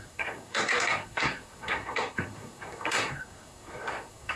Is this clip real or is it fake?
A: fake